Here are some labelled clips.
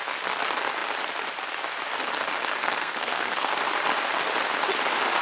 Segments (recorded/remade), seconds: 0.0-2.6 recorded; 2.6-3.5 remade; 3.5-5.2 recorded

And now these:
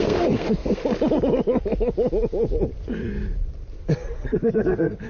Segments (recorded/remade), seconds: 0.0-0.8 remade; 0.8-3.8 recorded; 3.8-5.1 remade

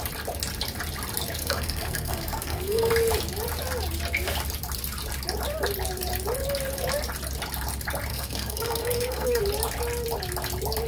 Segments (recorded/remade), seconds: 0.0-1.4 recorded; 1.4-2.9 remade; 2.9-8.1 recorded; 8.1-9.4 remade; 9.4-10.9 recorded

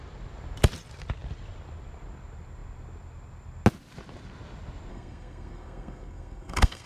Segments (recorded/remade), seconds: 0.0-4.9 recorded; 4.9-6.9 remade

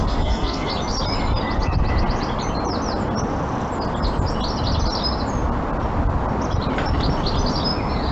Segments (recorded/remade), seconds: 0.0-0.7 remade; 0.7-8.1 recorded